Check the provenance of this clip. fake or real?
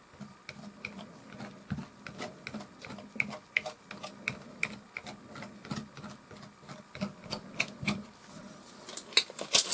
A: real